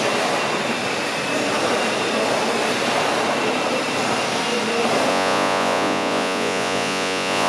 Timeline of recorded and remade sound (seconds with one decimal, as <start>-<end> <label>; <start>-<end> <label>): 0.0-5.1 recorded; 5.1-7.5 remade